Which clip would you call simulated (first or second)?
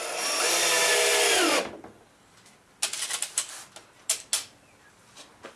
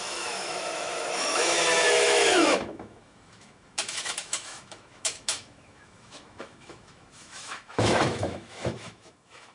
second